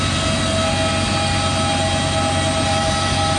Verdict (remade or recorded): recorded